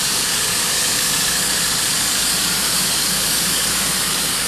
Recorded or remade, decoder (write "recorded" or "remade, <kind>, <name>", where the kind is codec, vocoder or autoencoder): remade, codec, DAC